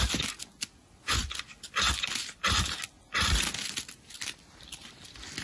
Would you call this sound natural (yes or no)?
yes